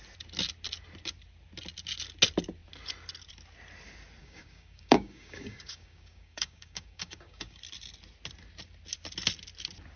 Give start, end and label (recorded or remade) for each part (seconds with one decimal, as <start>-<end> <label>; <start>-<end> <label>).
0.0-4.2 recorded; 4.2-7.6 remade; 7.6-10.0 recorded